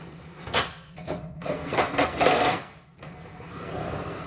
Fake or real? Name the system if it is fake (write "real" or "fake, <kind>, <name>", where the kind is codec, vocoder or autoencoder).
fake, codec, SNAC